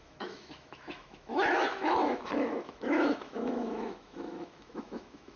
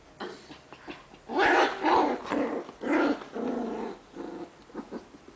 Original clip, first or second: second